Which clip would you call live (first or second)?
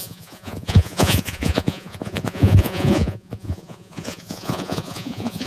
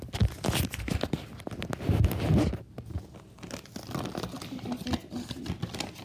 second